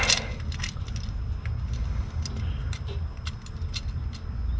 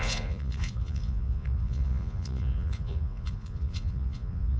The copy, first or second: second